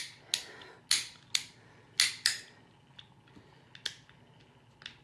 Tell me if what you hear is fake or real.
real